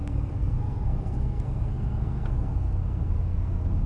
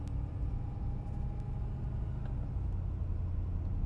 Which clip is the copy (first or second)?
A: first